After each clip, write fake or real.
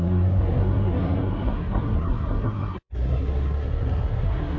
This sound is fake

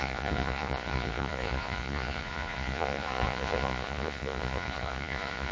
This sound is fake